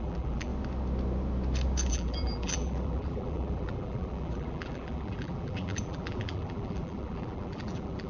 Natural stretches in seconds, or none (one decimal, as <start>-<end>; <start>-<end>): 0.5-1.9